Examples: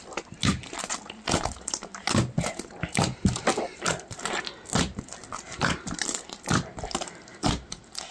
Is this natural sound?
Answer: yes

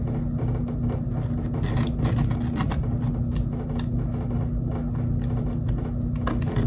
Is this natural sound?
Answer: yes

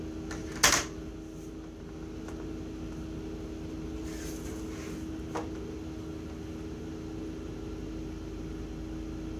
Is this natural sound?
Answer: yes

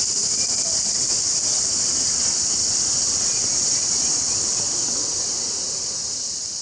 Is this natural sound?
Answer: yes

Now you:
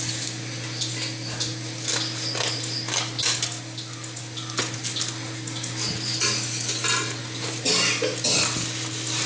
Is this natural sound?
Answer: yes